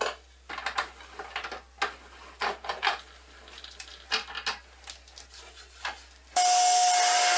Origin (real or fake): real